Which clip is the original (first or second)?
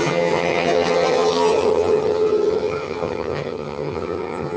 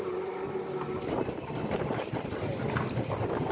second